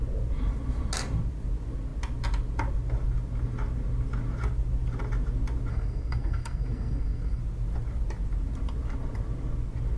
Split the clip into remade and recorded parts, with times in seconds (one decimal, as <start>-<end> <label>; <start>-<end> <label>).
0.0-5.7 recorded; 5.7-7.4 remade; 7.4-10.0 recorded